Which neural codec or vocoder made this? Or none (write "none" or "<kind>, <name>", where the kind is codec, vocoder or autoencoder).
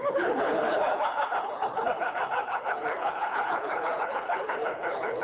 codec, HILCodec